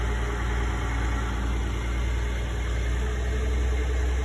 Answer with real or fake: real